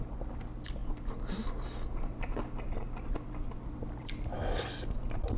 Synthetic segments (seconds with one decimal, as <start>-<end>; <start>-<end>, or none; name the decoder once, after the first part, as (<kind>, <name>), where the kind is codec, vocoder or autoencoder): none

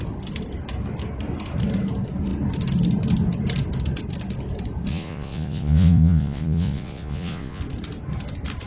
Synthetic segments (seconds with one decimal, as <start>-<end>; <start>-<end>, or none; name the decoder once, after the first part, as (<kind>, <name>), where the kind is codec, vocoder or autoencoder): 4.9-7.6 (vocoder, Vocos)

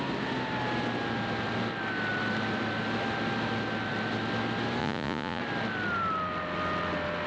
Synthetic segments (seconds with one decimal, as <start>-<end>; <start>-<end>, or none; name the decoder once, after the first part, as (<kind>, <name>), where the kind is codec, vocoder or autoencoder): 4.8-5.4 (vocoder, Vocos)

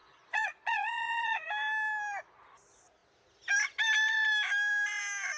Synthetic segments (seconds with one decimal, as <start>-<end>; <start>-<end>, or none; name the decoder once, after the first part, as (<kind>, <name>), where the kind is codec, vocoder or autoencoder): 0.0-1.5 (vocoder, Vocos)

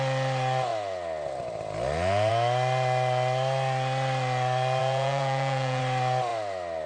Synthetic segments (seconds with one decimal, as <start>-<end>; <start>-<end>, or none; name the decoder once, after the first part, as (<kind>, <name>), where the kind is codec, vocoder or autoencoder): 4.8-5.8 (vocoder, Vocos)

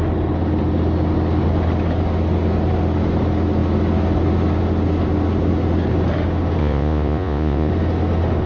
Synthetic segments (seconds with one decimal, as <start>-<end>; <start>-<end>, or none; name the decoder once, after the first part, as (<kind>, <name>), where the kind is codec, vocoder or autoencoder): 6.6-7.7 (vocoder, Vocos)